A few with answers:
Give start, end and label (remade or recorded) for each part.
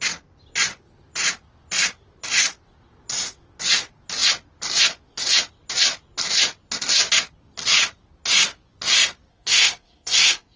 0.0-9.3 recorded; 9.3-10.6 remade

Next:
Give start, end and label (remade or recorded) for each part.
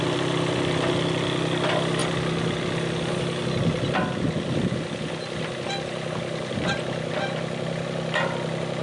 0.0-8.8 recorded